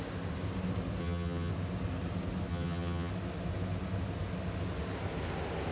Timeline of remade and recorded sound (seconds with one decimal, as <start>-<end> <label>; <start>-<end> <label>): 0.0-1.0 recorded; 1.0-1.5 remade; 1.5-2.5 recorded; 2.5-3.1 remade; 3.1-5.7 recorded